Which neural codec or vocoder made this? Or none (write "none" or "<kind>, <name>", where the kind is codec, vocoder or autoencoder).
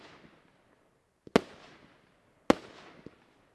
none